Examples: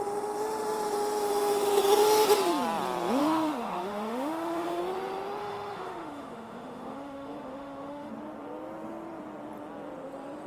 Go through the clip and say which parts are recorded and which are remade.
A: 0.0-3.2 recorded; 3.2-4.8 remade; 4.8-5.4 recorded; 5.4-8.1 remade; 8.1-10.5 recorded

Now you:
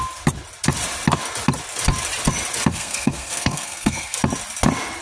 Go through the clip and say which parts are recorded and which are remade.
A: 0.0-2.7 recorded; 2.7-4.2 remade; 4.2-5.0 recorded

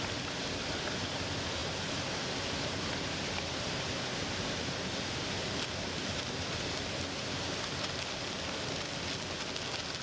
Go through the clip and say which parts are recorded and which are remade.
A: 0.0-10.0 recorded

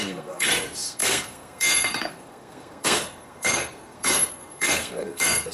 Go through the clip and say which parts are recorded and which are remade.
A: 0.0-5.5 remade

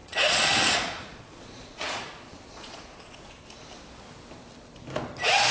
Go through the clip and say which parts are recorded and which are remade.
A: 0.0-3.3 remade; 3.3-5.5 recorded

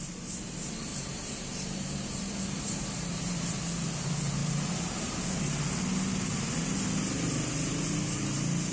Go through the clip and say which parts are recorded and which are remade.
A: 0.0-0.9 recorded; 0.9-3.6 remade; 3.6-4.4 recorded; 4.4-5.4 remade; 5.4-8.7 recorded